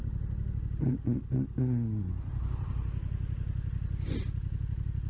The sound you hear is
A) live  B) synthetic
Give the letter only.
A